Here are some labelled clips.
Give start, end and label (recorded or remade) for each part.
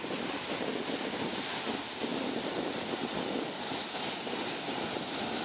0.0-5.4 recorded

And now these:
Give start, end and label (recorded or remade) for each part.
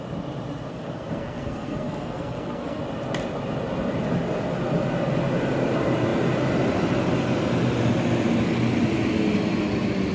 0.0-0.7 recorded; 0.7-2.8 remade; 2.8-10.1 recorded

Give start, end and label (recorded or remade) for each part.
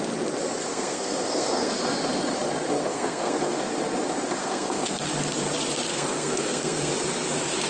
0.0-0.7 recorded; 0.7-1.7 remade; 1.7-2.8 recorded; 2.8-3.6 remade; 3.6-4.4 recorded; 4.4-5.1 remade; 5.1-5.9 recorded; 5.9-6.9 remade; 6.9-7.7 recorded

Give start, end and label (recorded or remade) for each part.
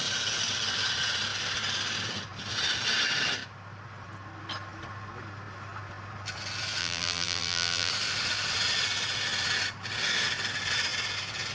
0.0-6.8 recorded; 6.8-7.9 remade; 7.9-11.5 recorded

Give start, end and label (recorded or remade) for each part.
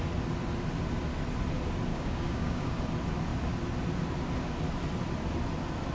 0.0-1.9 recorded; 1.9-2.8 remade; 2.8-5.9 recorded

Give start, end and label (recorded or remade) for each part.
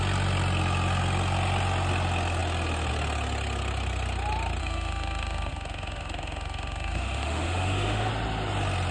0.0-4.6 recorded; 4.6-8.1 remade; 8.1-8.9 recorded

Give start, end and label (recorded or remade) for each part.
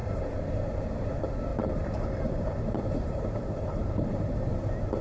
0.0-1.1 remade; 1.1-1.5 recorded; 1.5-4.5 remade; 4.5-5.0 recorded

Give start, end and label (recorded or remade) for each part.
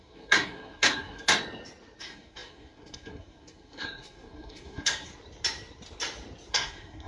0.0-1.3 remade; 1.3-2.0 recorded; 2.0-5.1 remade; 5.1-6.5 recorded; 6.5-7.1 remade